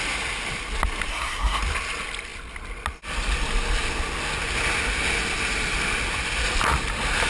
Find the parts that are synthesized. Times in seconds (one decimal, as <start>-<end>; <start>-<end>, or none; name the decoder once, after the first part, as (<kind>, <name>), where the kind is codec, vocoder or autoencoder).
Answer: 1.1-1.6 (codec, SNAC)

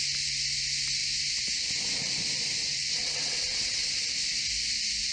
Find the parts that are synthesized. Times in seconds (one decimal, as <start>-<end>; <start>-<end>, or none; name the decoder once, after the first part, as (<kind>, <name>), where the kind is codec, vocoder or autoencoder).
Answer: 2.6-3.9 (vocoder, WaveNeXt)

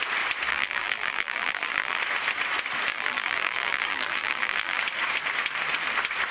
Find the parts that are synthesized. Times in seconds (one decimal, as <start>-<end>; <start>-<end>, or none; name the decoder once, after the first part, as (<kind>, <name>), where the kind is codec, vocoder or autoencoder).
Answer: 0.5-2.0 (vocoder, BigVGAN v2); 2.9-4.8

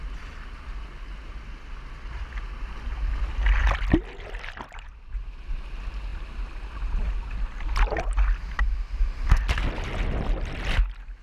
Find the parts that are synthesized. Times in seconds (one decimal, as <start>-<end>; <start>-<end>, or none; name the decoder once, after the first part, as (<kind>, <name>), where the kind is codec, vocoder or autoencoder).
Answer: none

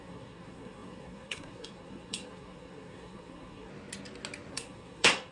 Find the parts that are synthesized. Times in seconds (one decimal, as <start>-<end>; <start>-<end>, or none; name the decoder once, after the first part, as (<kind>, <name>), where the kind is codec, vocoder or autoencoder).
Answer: 0.0-3.7 (codec, SNAC); 4.5-5.3

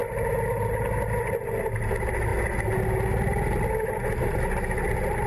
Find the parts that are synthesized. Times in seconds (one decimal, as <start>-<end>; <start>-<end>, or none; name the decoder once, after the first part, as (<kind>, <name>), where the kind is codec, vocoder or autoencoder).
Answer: none